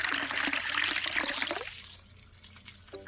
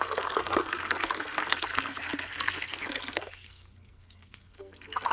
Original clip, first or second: first